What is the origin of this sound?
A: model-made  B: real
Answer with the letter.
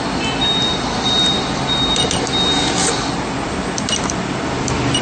B